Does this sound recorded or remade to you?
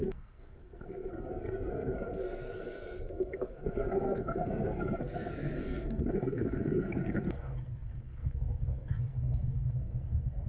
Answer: remade